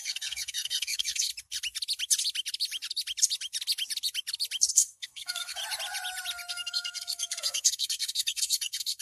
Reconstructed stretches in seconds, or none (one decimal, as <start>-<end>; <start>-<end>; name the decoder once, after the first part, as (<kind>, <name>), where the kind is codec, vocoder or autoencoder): 0.0-1.3 (codec, SNAC); 4.7-5.6; 6.5-9.0